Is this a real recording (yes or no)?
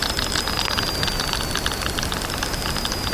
yes